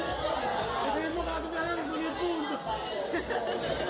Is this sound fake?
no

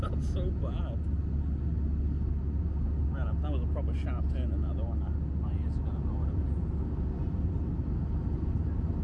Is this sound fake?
no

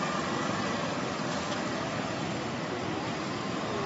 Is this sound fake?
no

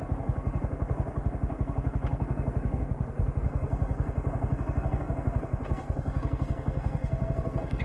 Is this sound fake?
yes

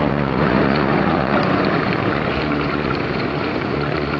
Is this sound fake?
yes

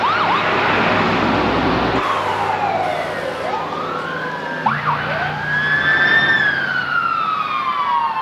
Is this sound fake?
no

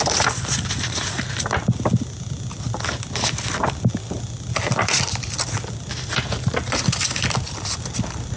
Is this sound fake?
no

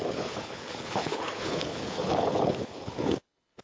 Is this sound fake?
yes